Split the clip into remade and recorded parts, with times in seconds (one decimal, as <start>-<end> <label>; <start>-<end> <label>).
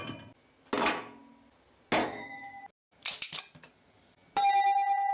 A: 0.0-2.0 recorded; 2.0-2.6 remade; 2.6-5.1 recorded